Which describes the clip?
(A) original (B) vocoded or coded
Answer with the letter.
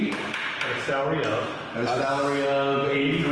A